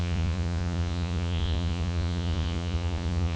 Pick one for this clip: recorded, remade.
remade